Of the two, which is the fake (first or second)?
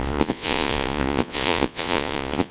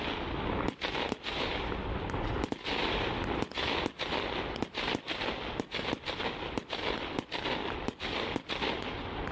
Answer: first